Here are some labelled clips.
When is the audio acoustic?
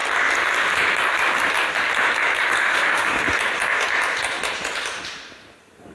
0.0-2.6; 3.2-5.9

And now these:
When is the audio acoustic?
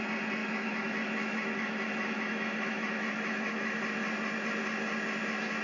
0.0-0.4; 3.8-5.6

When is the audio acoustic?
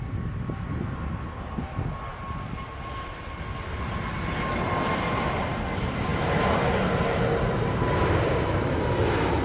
0.0-9.4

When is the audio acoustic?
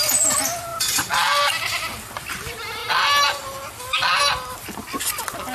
0.0-5.5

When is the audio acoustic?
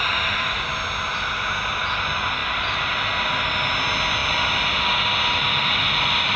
0.0-6.4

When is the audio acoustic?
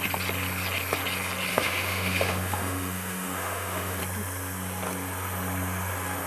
0.0-1.5; 4.0-6.3